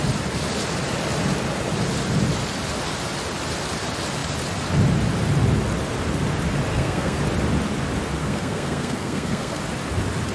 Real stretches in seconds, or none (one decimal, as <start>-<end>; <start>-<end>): 0.0-6.7; 7.2-8.2; 9.6-10.3